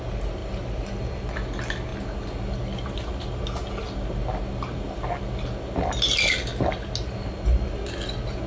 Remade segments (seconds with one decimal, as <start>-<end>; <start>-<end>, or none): none